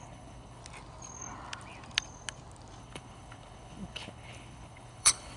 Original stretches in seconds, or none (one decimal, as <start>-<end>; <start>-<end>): 0.6-2.8

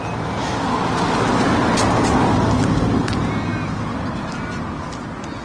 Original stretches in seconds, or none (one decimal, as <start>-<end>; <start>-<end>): 0.0-5.4